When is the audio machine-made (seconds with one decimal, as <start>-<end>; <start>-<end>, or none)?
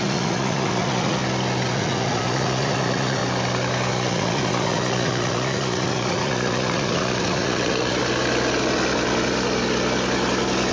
0.0-1.2; 1.7-3.2; 3.9-8.0